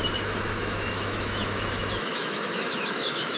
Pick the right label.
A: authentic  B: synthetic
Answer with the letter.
B